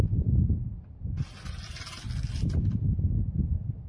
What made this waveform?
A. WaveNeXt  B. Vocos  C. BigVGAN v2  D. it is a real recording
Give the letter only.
D